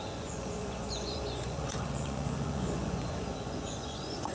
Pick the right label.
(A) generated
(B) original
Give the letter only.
A